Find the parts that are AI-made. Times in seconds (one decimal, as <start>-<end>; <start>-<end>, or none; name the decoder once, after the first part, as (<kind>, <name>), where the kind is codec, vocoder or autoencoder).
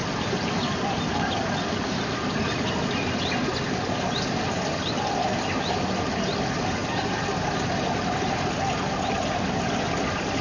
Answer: none